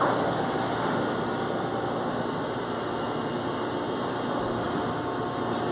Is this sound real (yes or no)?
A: yes